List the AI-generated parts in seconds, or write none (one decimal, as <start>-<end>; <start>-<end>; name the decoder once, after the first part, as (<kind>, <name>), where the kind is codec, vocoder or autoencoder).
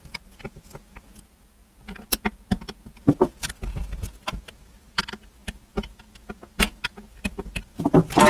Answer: none